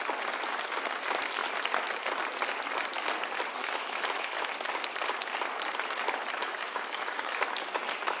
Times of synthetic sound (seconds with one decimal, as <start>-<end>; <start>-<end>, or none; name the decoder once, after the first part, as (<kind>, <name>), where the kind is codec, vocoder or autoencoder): 3.6-4.4 (autoencoder, DAC-VAE); 6.4-7.4